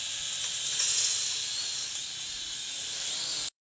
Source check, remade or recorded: remade